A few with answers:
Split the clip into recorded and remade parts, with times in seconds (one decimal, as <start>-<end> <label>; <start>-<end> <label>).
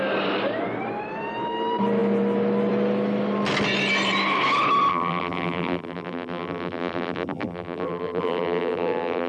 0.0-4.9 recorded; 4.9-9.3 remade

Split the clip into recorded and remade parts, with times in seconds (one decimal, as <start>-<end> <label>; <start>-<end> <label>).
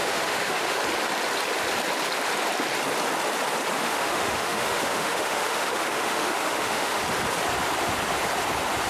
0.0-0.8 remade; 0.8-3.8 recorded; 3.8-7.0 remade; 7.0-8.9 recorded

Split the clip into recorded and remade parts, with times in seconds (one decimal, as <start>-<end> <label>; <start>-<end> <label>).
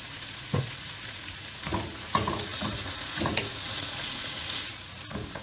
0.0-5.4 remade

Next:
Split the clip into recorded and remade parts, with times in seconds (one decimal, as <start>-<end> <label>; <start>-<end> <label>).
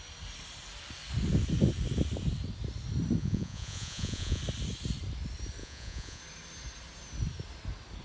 0.0-3.2 recorded; 3.2-4.4 remade; 4.4-5.6 recorded; 5.6-6.2 remade; 6.2-8.0 recorded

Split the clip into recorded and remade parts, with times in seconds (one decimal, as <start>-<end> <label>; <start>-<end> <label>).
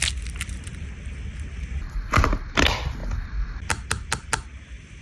0.0-5.0 recorded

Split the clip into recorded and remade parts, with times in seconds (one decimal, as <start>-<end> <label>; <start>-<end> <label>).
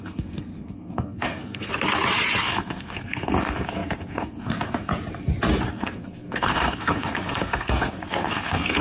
0.0-1.7 remade; 1.7-2.4 recorded; 2.4-4.9 remade; 4.9-5.7 recorded; 5.7-8.8 remade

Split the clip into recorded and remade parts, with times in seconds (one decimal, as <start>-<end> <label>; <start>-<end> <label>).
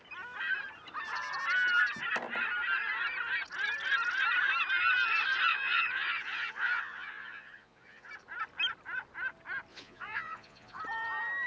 0.0-5.5 recorded; 5.5-8.1 remade; 8.1-9.7 recorded; 9.7-10.8 remade; 10.8-11.5 recorded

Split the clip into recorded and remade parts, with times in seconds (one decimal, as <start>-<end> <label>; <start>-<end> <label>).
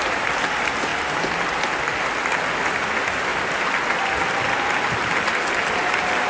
0.0-6.3 recorded